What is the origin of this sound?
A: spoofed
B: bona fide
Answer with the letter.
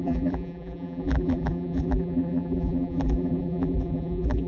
A